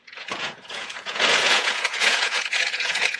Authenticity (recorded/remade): remade